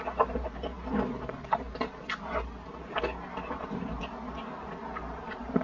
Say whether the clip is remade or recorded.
recorded